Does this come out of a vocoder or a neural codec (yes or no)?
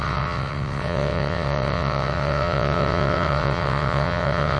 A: yes